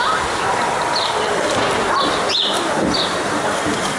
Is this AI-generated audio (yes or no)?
yes